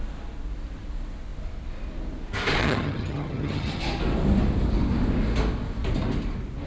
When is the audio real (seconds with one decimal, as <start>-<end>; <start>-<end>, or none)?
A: 0.0-2.6; 3.8-6.7